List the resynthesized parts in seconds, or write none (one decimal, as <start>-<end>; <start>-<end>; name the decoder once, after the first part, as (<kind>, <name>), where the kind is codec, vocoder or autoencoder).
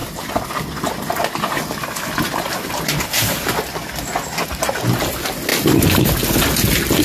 5.5-6.0 (vocoder, BigVGAN v2)